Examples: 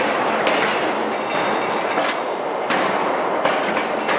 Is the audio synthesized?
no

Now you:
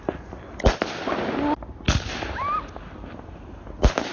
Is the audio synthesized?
no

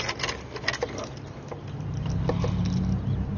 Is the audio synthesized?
no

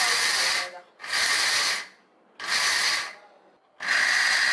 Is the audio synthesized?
no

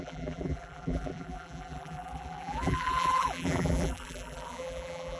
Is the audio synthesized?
yes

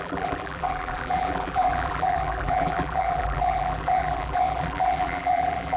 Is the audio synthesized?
yes